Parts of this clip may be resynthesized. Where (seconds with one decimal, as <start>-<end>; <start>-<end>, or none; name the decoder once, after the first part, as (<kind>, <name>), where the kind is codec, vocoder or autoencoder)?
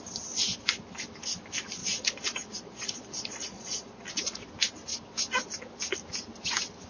1.8-4.5 (vocoder, Vocos)